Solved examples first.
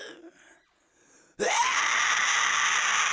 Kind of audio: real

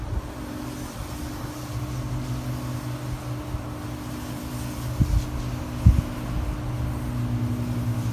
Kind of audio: real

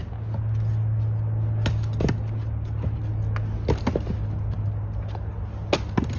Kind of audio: real